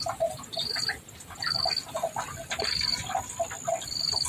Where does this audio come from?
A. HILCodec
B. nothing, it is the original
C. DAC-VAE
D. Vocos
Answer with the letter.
B